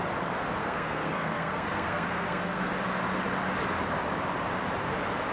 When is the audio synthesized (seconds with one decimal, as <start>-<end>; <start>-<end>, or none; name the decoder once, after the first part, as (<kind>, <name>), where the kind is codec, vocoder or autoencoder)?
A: 0.6-2.7 (codec, SNAC)